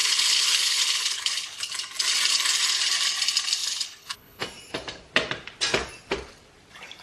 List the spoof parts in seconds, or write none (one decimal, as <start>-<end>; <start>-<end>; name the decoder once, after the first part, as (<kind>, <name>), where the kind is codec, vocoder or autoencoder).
0.0-1.7 (codec, HILCodec); 3.6-4.4

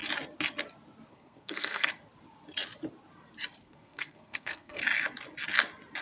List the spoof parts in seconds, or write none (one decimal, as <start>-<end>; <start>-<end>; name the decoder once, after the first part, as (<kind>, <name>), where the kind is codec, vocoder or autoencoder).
1.1-1.9 (codec, SNAC); 3.6-4.8

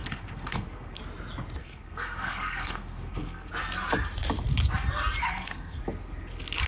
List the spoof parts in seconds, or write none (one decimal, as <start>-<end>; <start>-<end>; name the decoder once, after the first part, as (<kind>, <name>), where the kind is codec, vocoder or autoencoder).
0.0-1.0 (codec, SNAC); 1.6-3.5; 5.2-5.8

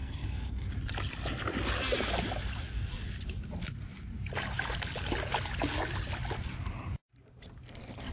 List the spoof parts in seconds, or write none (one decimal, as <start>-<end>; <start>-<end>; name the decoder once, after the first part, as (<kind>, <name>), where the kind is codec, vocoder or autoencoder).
0.0-0.7 (codec, SNAC)

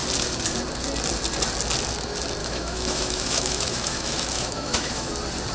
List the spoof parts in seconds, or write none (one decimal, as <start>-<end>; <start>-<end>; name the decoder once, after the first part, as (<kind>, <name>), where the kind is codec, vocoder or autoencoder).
2.4-5.1 (autoencoder, DAC-VAE)

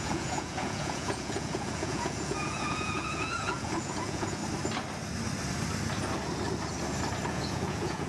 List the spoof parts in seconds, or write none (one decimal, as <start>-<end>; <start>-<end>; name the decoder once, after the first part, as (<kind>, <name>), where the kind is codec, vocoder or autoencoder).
0.0-4.4 (vocoder, Vocos); 7.3-8.1

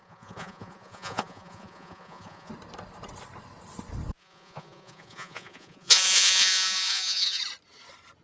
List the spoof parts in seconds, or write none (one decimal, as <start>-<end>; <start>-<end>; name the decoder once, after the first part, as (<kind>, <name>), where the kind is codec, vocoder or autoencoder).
0.0-2.5 (vocoder, Vocos); 4.2-7.4

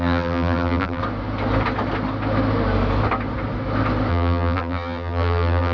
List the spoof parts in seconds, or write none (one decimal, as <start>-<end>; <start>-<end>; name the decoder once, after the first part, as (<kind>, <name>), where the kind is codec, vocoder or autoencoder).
0.0-1.0 (vocoder, BigVGAN v2); 4.1-5.7